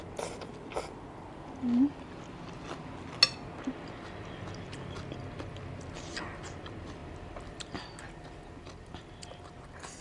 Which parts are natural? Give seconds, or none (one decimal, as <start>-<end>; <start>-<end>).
0.0-10.0